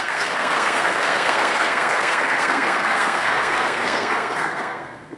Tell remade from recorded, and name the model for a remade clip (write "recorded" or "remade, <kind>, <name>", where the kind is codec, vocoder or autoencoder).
remade, codec, SNAC